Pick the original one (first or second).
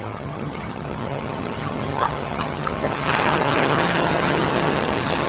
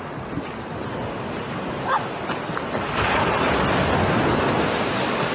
second